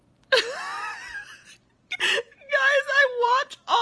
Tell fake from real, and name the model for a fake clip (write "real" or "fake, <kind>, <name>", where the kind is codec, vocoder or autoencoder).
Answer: fake, vocoder, BigVGAN v2